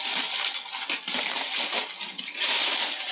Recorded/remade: recorded